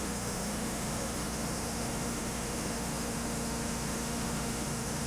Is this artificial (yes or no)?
yes